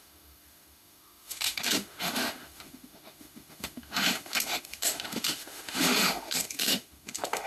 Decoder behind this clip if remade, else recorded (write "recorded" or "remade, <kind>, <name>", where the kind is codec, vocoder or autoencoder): remade, autoencoder, DAC-VAE